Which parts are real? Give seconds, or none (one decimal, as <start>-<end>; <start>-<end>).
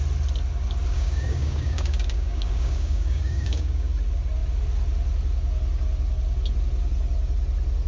0.0-0.9; 3.9-7.9